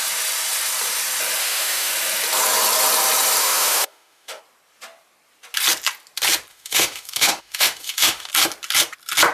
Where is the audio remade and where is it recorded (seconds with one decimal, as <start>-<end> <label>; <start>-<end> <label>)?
0.0-1.4 recorded; 1.4-1.9 remade; 1.9-3.4 recorded; 3.4-4.4 remade; 4.4-6.5 recorded; 6.5-8.3 remade; 8.3-9.3 recorded